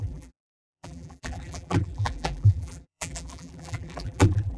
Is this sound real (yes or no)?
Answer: no